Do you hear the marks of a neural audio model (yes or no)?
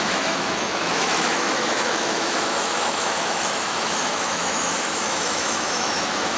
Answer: yes